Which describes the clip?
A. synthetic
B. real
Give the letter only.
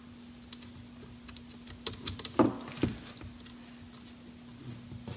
B